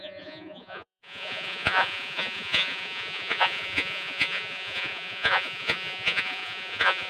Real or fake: fake